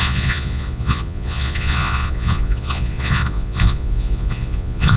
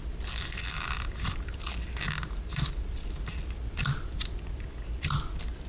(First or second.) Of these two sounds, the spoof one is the first